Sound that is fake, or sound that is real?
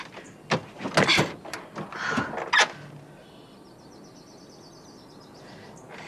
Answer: real